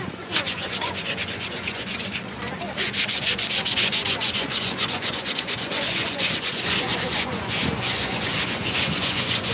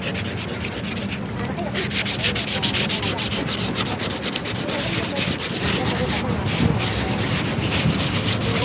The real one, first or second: second